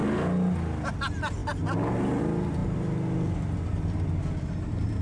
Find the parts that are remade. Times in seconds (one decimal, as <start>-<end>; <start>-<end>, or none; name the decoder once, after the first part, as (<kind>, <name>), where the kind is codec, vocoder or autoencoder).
none